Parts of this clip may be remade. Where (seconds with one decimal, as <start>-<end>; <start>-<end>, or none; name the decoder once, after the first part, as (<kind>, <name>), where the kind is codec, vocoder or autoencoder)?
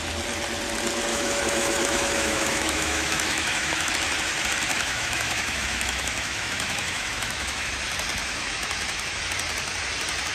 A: 1.1-3.9 (autoencoder, DAC-VAE); 4.7-7.7; 8.2-9.2